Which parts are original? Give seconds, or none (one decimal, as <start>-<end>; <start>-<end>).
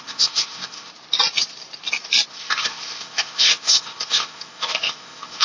0.9-2.3